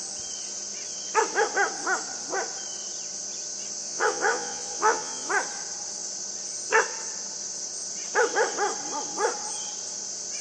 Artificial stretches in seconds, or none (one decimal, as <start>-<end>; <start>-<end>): 3.8-5.3